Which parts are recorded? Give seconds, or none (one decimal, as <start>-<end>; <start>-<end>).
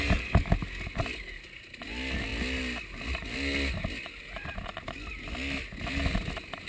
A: 0.0-6.7